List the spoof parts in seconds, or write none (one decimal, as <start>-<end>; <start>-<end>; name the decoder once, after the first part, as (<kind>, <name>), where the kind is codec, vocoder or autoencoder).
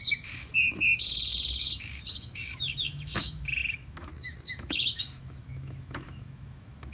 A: 0.0-6.9 (autoencoder, DAC-VAE)